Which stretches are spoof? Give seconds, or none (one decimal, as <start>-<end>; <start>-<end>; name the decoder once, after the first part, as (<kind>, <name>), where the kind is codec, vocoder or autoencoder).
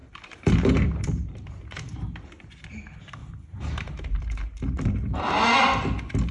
0.0-2.3 (vocoder, BigVGAN v2); 3.2-5.2